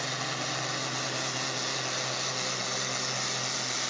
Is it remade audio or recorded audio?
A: recorded